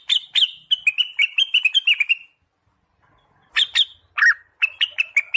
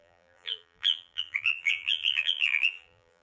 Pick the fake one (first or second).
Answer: second